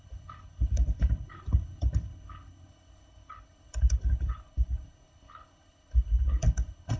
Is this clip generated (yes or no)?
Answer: yes